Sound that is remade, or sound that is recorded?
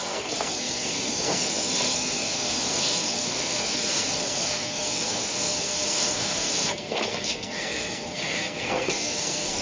remade